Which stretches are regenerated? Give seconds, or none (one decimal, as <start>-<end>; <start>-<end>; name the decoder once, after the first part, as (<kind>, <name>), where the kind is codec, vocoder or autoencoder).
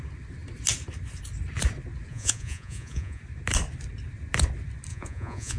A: 2.1-3.2 (vocoder, Vocos); 4.9-5.6